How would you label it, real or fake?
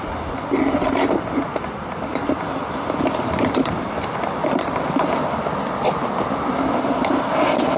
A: real